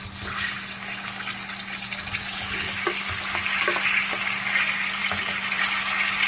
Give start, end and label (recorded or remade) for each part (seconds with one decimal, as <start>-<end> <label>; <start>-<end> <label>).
0.0-6.3 recorded